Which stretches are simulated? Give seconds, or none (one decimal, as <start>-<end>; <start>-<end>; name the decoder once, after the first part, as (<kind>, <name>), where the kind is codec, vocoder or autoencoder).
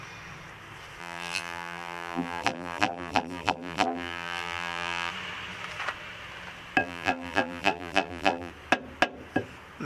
1.0-5.1 (vocoder, BigVGAN v2); 6.8-8.5